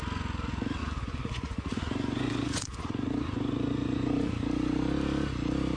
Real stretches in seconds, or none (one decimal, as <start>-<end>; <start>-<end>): 0.0-0.8; 4.3-5.8